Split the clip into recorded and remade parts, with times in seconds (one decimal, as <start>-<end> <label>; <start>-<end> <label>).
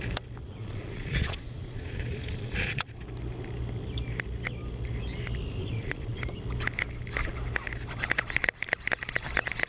0.0-0.4 recorded; 0.4-3.0 remade; 3.0-5.6 recorded; 5.6-6.2 remade; 6.2-9.7 recorded